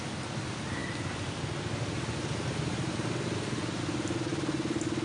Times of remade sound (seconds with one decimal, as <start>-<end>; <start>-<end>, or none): none

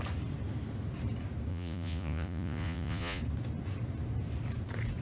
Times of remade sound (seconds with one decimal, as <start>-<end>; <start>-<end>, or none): 1.5-3.2